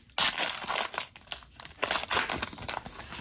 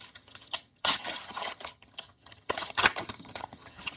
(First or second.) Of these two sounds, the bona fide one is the first